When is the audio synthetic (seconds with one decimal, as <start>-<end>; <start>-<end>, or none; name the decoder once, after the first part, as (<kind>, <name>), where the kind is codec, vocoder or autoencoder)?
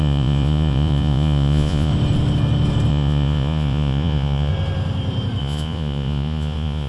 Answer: 0.0-1.9 (vocoder, Vocos); 2.9-4.5; 5.4-6.9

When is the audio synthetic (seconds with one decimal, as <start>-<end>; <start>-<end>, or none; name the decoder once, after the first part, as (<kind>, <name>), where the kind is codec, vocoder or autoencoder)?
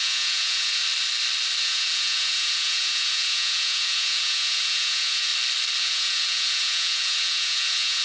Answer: 0.0-0.8 (vocoder, Vocos); 1.6-5.3; 5.8-8.0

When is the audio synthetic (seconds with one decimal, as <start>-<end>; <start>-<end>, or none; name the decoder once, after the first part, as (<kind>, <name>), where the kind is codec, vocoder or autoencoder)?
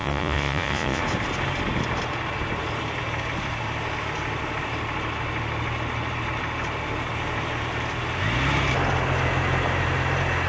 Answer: 0.0-1.0 (vocoder, Vocos)